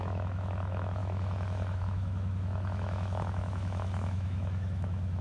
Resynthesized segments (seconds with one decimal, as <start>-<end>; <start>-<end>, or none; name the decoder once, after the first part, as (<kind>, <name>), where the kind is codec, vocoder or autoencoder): 0.0-5.2 (autoencoder, DAC-VAE)